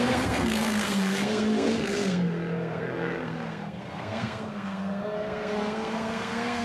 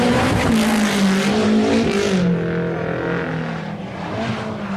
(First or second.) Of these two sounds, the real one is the second